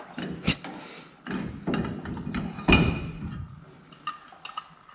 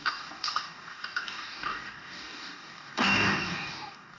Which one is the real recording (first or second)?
first